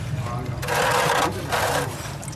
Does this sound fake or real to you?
real